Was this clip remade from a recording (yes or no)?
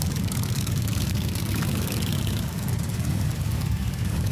yes